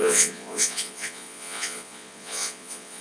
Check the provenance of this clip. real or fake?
fake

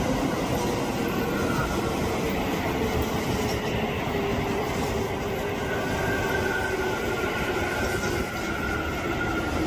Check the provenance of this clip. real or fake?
real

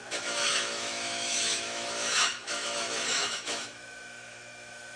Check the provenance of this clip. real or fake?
fake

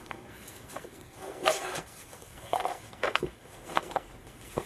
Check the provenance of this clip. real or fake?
fake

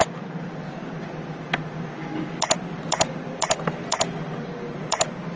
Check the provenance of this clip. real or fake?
real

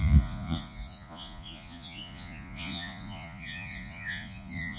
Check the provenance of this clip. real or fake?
fake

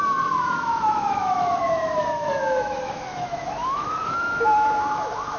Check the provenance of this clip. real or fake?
fake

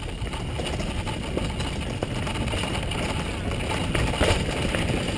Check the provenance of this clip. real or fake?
real